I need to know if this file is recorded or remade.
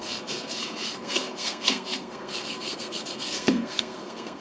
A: remade